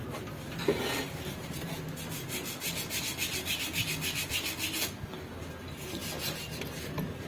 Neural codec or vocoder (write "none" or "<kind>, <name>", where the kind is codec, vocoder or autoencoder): none